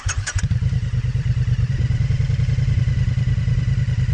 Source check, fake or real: fake